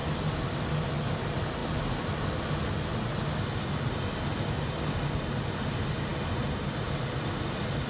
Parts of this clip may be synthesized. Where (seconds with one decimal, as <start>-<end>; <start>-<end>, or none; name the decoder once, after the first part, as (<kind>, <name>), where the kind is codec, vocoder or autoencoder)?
none